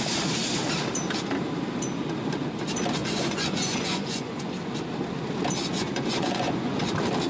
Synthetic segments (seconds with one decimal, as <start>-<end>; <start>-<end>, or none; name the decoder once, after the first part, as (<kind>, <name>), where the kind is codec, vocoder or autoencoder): 3.0-4.5 (vocoder, Vocos); 5.7-6.8